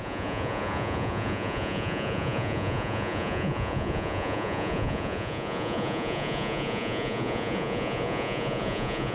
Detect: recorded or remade remade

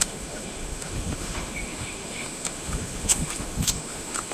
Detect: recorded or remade remade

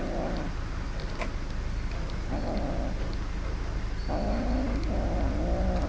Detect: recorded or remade recorded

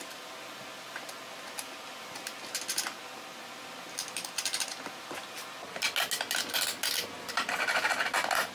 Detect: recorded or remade recorded